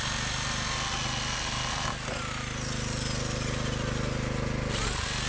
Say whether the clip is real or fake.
real